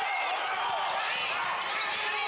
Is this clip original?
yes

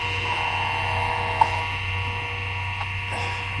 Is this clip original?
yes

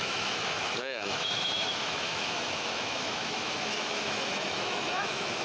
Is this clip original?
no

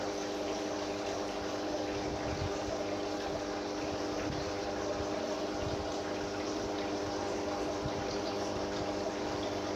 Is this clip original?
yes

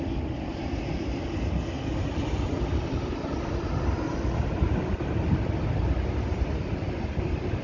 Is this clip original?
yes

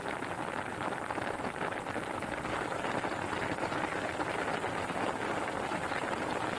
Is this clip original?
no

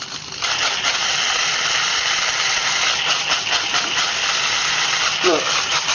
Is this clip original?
no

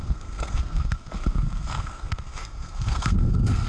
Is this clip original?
no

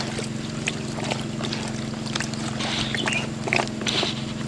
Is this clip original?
yes